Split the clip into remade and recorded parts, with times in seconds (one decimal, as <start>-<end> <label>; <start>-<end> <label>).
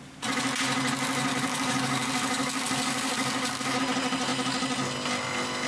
0.0-1.3 recorded; 1.3-3.8 remade; 3.8-5.7 recorded